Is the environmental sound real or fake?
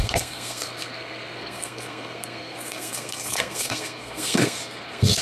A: fake